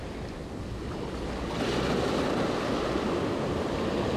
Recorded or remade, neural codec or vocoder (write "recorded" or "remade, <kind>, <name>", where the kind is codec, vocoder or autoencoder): recorded